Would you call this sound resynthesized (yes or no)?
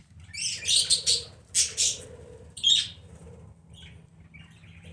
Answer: no